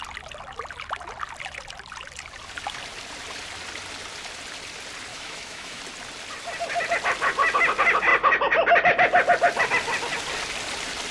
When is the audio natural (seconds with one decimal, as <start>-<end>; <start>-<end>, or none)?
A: 0.0-5.1; 5.8-11.1